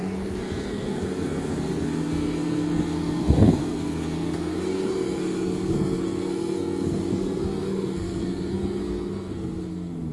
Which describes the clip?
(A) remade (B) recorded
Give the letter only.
A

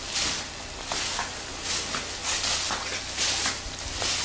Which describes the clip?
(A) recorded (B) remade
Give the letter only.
A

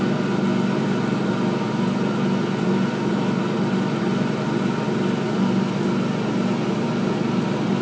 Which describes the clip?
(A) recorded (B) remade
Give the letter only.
A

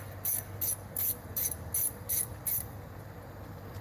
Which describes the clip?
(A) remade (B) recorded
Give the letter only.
B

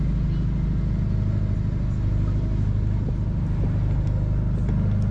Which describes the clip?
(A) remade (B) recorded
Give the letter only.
B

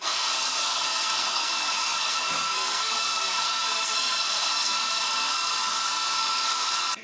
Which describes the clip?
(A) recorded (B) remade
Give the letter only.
B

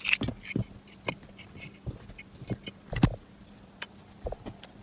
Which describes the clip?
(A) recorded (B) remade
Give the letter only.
A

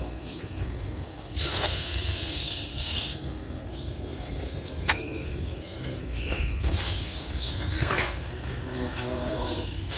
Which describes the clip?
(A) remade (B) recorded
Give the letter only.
A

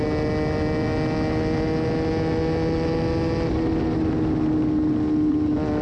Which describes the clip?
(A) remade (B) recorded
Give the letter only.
B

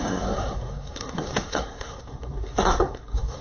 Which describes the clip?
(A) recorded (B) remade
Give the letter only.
B